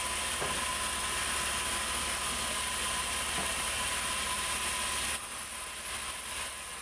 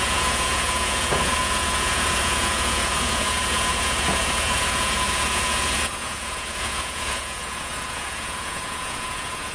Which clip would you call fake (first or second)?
second